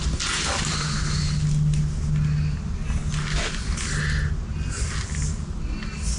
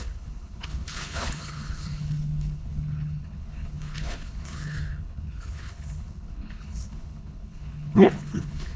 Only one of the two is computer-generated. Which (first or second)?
second